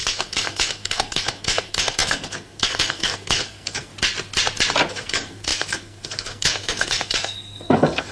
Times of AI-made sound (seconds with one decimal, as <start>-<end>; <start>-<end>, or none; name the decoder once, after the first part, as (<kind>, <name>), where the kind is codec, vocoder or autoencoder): 0.0-3.9 (codec, SNAC); 4.9-8.1

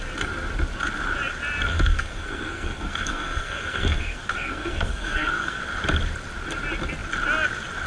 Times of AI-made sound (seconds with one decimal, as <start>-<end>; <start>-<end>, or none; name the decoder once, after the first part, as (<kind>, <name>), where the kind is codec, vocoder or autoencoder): 1.7-5.6 (codec, SNAC)